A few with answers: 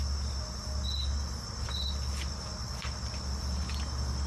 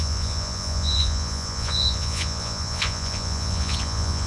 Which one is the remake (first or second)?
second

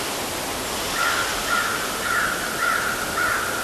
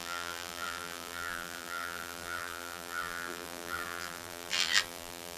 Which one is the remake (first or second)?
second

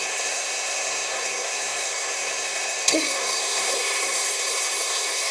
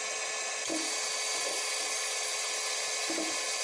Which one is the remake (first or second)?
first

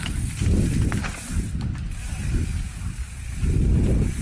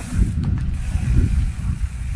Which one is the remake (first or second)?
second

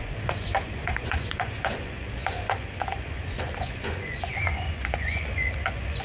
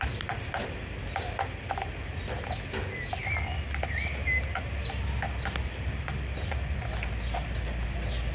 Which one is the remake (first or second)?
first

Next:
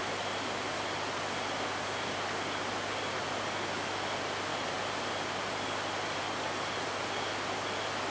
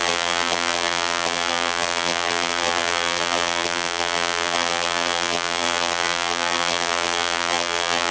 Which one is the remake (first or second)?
second